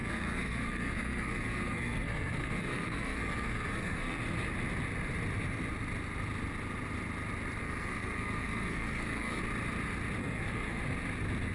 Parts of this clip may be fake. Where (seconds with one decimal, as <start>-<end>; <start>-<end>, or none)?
0.0-4.2; 7.6-9.4; 10.2-10.8